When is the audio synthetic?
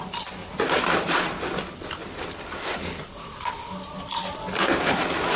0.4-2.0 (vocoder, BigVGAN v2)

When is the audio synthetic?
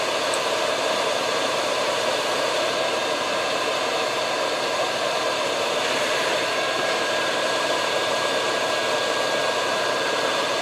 0.0-8.8 (vocoder, BigVGAN v2); 10.1-10.6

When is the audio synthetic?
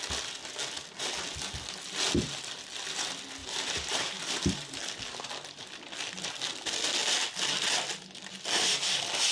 3.4-4.8 (vocoder, BigVGAN v2)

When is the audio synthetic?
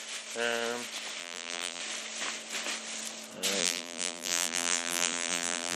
1.2-1.8 (vocoder, BigVGAN v2); 3.6-5.8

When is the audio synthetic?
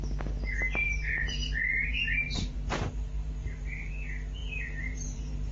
0.8-3.9 (vocoder, BigVGAN v2); 4.4-5.5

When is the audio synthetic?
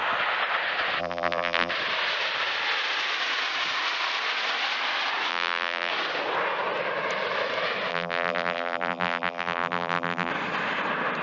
1.0-1.7 (vocoder, BigVGAN v2); 5.3-5.9; 7.9-10.3